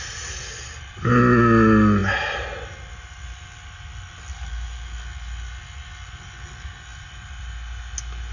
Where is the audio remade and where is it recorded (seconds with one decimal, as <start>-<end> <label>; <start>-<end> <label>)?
0.0-6.9 recorded; 6.9-7.8 remade; 7.8-8.3 recorded